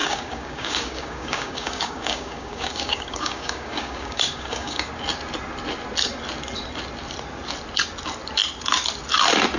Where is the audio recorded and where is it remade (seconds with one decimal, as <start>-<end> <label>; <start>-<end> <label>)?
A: 0.0-4.9 remade; 4.9-9.6 recorded